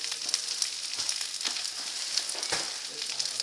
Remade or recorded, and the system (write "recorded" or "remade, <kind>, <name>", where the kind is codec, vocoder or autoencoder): recorded